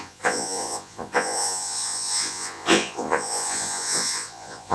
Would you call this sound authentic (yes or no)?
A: no